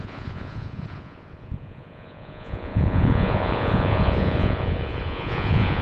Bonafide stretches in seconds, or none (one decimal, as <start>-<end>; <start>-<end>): none